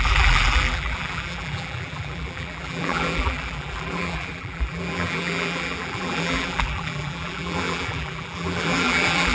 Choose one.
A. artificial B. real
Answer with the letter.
A